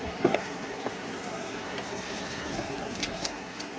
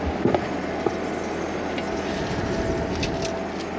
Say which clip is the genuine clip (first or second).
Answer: second